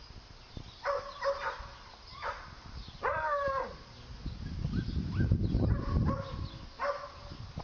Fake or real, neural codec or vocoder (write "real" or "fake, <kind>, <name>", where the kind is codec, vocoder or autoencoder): real